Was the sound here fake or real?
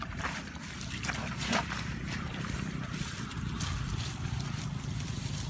fake